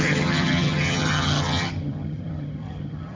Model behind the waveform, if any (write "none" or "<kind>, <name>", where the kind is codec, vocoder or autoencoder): vocoder, HiFi-GAN